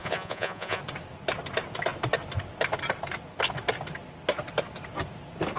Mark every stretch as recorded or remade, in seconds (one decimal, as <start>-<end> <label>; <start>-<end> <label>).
0.0-0.8 remade; 0.8-5.6 recorded